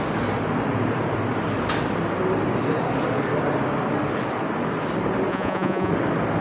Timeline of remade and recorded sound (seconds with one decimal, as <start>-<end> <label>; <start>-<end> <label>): 0.0-5.3 recorded; 5.3-5.9 remade; 5.9-6.4 recorded